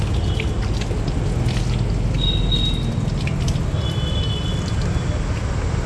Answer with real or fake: real